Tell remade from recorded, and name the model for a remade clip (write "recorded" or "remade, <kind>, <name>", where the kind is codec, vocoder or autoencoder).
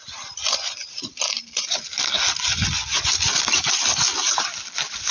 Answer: remade, vocoder, BigVGAN v2